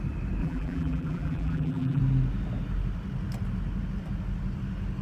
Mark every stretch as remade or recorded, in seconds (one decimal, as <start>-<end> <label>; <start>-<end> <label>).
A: 0.0-0.4 recorded; 0.4-2.0 remade; 2.0-5.0 recorded